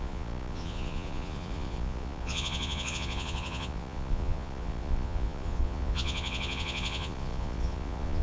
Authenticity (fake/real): fake